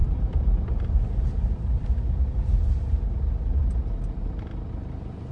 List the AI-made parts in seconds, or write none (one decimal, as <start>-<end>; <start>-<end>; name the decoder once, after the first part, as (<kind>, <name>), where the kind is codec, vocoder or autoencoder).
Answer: 0.0-3.2 (vocoder, BigVGAN v2)